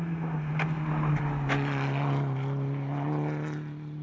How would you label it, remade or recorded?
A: recorded